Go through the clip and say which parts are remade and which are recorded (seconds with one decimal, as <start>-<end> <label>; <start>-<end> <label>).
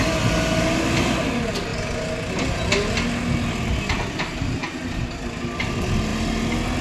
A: 0.0-6.8 recorded